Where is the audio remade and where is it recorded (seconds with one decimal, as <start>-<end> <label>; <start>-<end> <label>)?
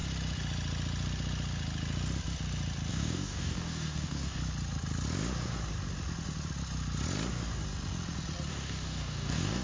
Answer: 0.0-2.9 recorded; 2.9-4.4 remade; 4.4-8.5 recorded; 8.5-9.6 remade